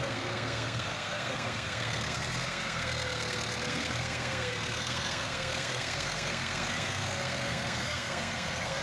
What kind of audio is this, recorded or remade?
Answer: remade